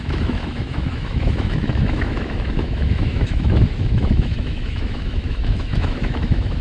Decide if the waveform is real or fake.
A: fake